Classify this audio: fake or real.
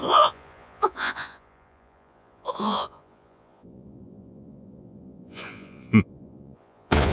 fake